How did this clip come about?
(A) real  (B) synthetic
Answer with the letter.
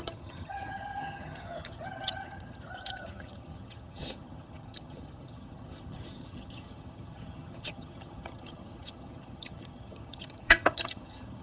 B